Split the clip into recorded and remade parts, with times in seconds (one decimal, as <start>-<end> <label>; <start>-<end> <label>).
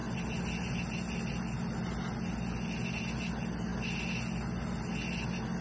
0.0-5.6 recorded